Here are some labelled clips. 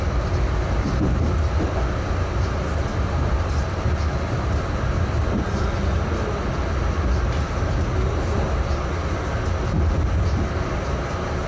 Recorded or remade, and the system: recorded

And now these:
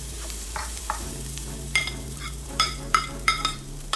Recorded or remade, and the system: remade, vocoder, BigVGAN v2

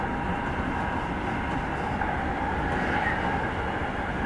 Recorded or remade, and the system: remade, vocoder, BigVGAN v2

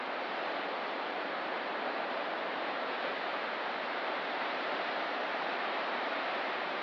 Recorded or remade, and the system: remade, vocoder, BigVGAN v2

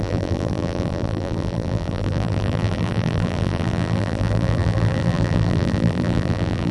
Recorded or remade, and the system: remade, vocoder, BigVGAN v2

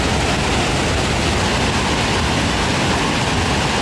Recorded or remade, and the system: recorded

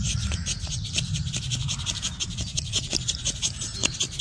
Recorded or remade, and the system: remade, vocoder, BigVGAN v2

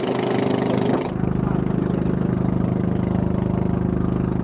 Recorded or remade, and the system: recorded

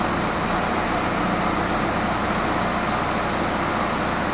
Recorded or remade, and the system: recorded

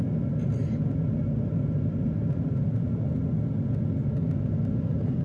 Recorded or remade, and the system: recorded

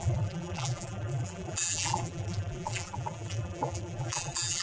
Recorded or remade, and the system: remade, vocoder, BigVGAN v2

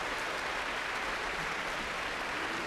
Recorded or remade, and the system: recorded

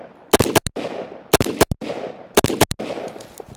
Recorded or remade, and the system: recorded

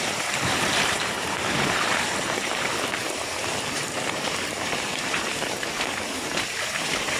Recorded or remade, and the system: remade, vocoder, BigVGAN v2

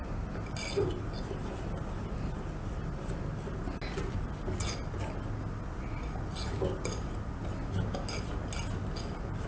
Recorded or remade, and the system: recorded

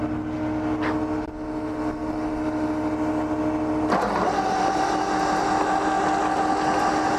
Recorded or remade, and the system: recorded